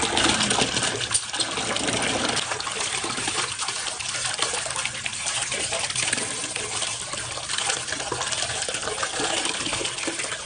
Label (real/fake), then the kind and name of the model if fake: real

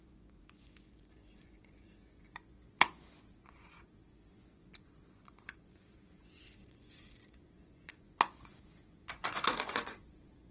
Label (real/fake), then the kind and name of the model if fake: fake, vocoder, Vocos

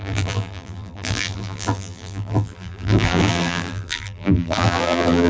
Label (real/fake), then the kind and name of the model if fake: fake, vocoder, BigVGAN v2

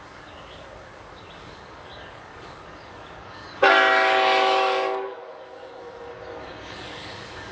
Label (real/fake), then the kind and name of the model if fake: fake, codec, DAC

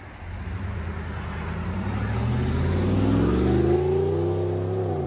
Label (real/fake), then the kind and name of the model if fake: real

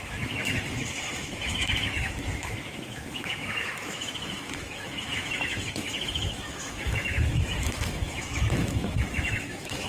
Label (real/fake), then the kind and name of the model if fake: fake, autoencoder, DAC-VAE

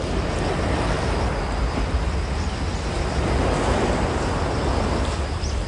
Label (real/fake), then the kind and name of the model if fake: real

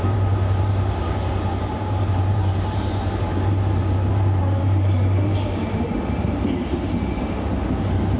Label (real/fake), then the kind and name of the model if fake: fake, vocoder, BigVGAN v2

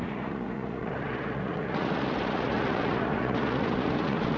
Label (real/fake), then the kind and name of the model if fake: fake, vocoder, Vocos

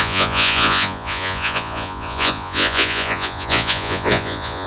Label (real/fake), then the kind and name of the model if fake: fake, vocoder, Vocos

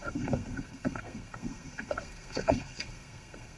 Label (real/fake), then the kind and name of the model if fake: fake, codec, SNAC